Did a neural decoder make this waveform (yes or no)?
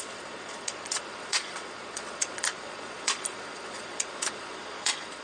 yes